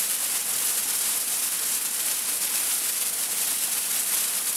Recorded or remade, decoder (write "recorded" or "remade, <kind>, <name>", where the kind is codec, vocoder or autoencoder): recorded